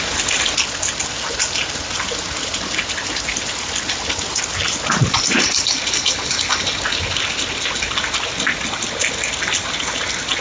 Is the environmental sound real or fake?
real